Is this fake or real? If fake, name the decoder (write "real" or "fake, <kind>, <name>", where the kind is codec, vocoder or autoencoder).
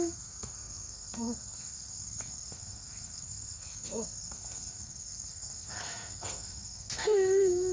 fake, codec, SNAC